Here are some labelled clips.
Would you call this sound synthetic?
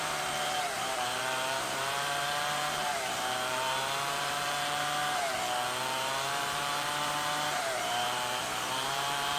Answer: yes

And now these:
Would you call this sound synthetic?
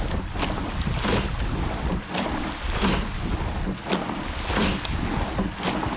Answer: no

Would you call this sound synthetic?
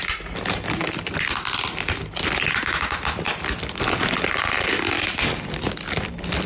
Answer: no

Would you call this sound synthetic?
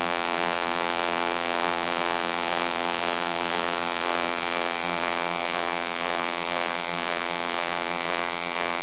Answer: yes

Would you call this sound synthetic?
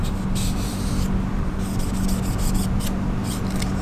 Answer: no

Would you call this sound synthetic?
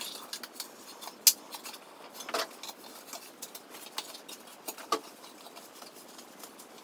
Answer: no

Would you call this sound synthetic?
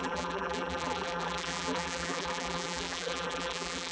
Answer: yes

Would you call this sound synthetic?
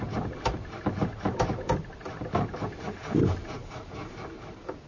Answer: yes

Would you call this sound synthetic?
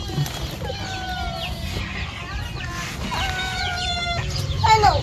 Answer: no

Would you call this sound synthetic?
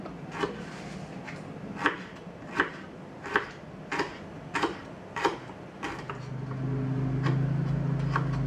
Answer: no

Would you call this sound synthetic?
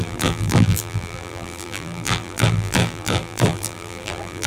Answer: yes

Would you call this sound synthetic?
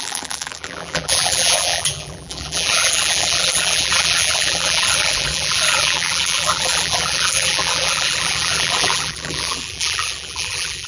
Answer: yes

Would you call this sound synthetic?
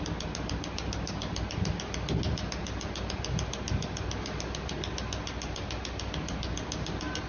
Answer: no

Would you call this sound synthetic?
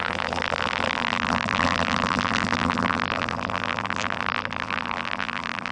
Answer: yes